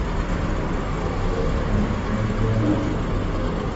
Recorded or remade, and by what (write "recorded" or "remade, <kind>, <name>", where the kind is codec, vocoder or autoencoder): recorded